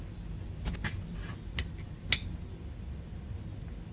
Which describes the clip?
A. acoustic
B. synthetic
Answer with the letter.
A